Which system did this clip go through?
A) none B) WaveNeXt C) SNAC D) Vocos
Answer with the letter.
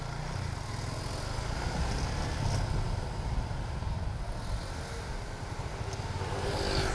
A